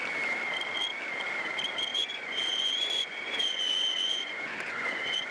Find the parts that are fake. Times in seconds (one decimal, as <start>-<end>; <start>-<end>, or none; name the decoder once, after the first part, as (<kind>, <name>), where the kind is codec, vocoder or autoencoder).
1.9-5.3 (vocoder, Vocos)